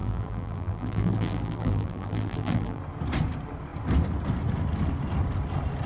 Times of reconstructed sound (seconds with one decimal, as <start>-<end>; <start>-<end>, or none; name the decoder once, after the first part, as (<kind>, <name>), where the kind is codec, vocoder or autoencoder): 0.0-2.8 (vocoder, BigVGAN v2)